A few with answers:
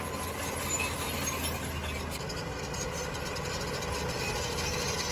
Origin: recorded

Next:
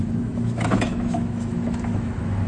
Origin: remade